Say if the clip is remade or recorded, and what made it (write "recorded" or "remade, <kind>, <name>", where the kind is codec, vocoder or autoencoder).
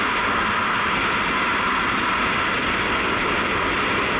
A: recorded